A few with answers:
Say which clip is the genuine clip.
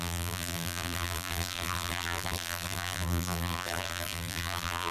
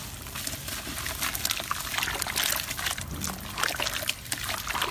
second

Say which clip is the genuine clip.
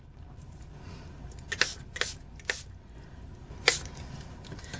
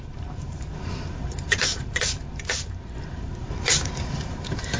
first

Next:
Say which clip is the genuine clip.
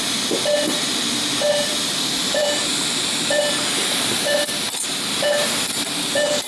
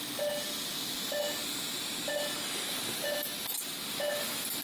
second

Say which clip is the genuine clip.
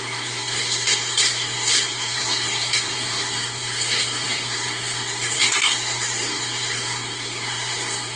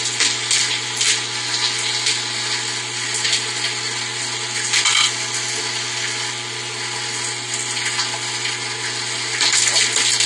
second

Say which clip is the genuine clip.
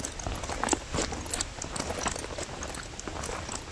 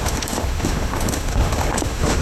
first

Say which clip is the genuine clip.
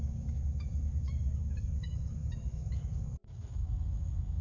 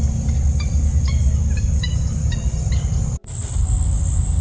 second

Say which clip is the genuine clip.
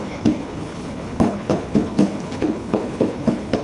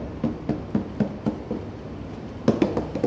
second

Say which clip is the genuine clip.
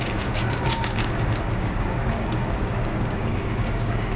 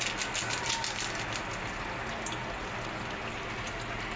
second